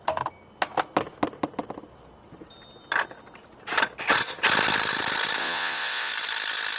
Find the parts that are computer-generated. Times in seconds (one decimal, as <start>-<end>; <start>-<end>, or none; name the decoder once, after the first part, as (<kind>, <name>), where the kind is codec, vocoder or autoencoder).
5.4-6.1 (vocoder, Vocos)